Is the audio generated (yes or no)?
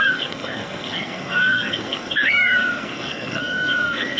yes